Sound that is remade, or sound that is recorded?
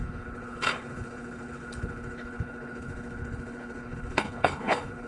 remade